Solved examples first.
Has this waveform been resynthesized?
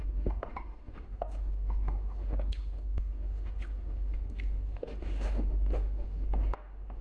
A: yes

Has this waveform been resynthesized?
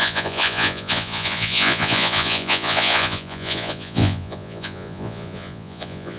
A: yes